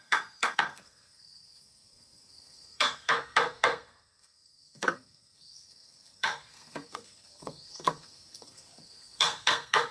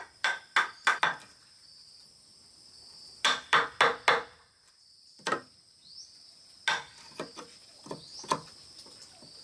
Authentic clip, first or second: second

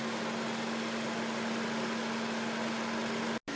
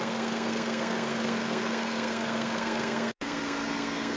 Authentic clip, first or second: first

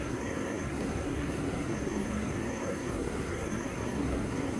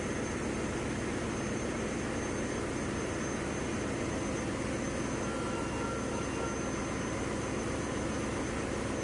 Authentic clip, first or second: second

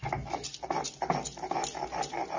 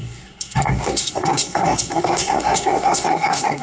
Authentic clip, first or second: first